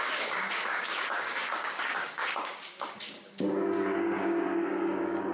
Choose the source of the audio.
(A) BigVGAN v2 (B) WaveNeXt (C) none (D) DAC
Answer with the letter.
D